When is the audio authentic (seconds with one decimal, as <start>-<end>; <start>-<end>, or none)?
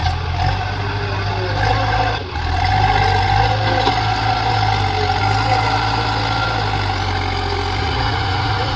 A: 0.0-7.8